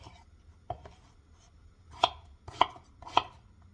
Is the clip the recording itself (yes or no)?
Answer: yes